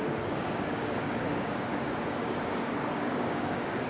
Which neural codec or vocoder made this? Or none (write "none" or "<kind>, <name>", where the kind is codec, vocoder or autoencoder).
codec, DAC